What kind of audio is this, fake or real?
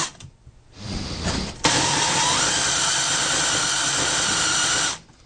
real